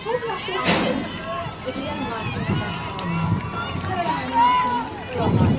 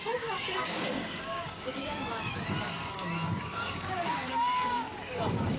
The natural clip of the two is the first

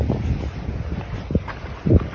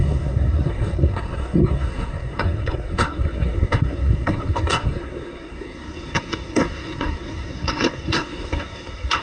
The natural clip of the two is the first